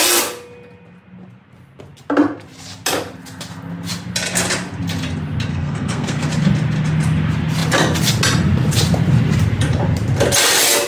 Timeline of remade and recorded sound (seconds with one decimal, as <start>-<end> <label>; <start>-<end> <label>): 0.0-5.5 recorded; 5.5-6.3 remade; 6.3-10.9 recorded